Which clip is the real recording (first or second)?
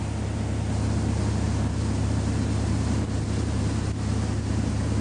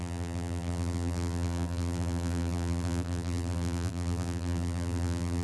first